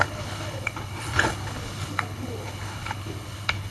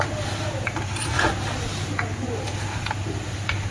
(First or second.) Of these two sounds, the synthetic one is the first